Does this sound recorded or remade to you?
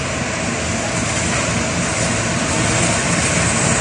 recorded